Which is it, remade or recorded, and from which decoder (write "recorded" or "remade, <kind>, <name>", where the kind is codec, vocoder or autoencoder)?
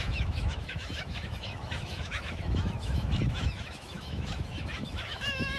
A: remade, autoencoder, DAC-VAE